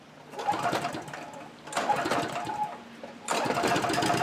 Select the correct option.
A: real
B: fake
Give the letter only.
A